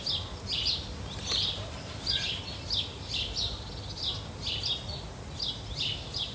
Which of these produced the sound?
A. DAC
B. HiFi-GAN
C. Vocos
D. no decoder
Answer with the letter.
D